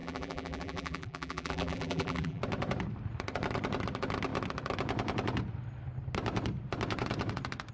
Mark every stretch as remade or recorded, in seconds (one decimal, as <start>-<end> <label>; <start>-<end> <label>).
0.0-2.4 remade; 2.4-7.7 recorded